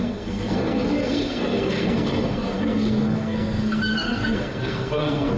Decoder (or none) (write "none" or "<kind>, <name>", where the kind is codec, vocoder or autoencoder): codec, SNAC